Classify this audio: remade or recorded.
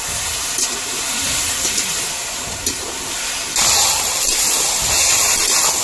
recorded